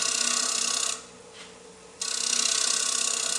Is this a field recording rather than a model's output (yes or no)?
yes